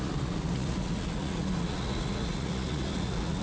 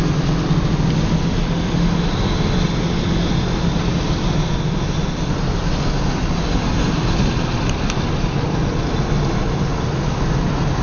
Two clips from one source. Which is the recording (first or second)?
second